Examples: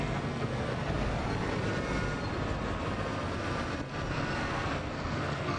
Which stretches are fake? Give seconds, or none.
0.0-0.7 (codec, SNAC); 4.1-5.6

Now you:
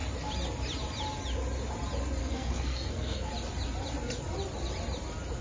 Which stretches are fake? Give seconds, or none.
2.2-3.3 (codec, SNAC)

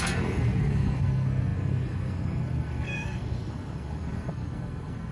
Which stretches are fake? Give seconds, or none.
0.0-5.1 (codec, SNAC)

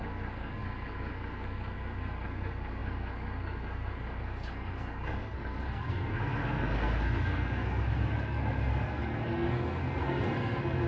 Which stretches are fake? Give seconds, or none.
0.0-10.9 (codec, SNAC)